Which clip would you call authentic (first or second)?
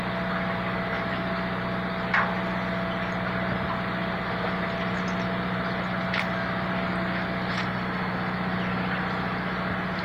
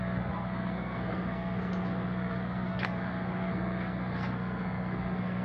first